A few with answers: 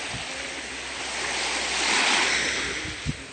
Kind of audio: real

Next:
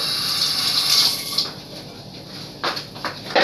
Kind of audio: real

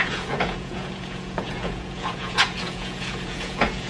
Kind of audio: fake